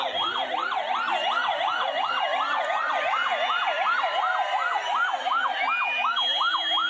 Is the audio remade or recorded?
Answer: recorded